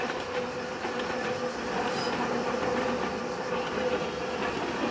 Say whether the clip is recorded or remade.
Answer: recorded